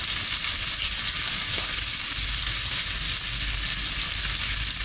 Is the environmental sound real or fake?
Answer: real